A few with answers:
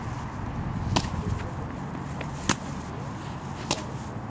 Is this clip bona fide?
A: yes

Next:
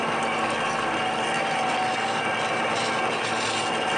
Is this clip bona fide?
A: yes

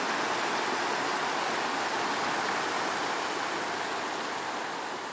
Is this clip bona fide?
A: yes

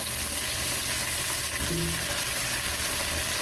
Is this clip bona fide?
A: yes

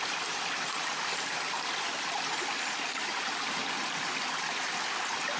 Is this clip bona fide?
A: yes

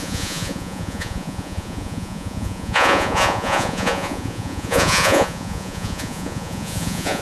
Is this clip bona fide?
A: no